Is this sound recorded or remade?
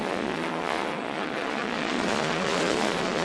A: remade